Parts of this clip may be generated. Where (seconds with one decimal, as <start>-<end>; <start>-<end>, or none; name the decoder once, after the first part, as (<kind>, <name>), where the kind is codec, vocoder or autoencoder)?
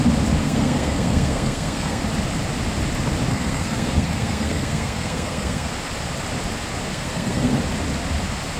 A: 0.4-2.0 (codec, SNAC); 3.3-5.7; 6.9-7.6